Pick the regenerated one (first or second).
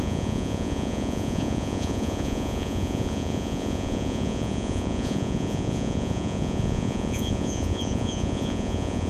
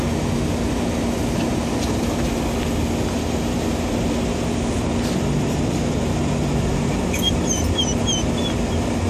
first